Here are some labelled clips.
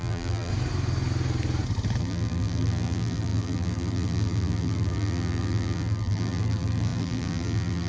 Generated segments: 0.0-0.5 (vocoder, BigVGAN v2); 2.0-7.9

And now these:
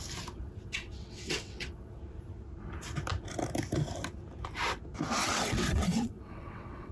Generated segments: 0.4-2.0 (vocoder, WaveNeXt); 5.2-6.9

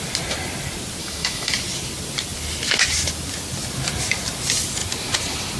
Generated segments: 1.0-1.6 (autoencoder, DAC-VAE)

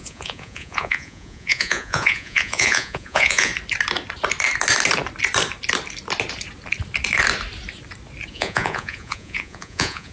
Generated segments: 0.0-3.5 (vocoder, Vocos); 8.3-10.1

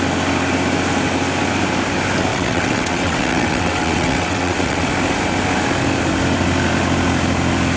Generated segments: 2.3-4.9 (vocoder, WaveNeXt)

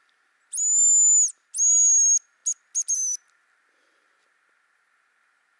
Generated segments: none